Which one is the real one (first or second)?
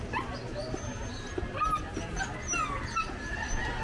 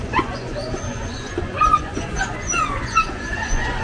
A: first